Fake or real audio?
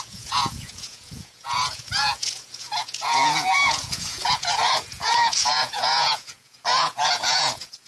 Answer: fake